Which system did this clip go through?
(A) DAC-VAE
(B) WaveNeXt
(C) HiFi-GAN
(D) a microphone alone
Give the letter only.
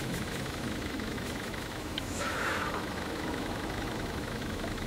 A